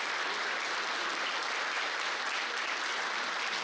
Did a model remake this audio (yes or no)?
no